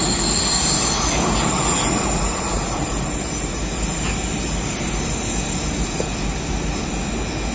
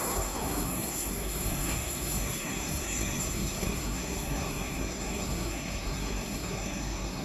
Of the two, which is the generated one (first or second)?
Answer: second